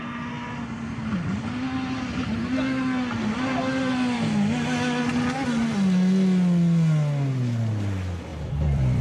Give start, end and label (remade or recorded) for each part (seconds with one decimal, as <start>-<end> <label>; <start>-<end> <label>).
0.0-8.3 recorded; 8.3-9.0 remade